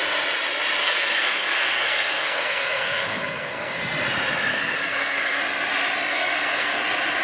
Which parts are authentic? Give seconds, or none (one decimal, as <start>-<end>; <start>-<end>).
0.0-0.8; 3.8-4.5; 5.4-6.1; 6.8-7.2